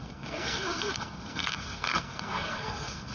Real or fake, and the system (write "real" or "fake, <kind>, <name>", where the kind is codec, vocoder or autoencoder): fake, codec, SNAC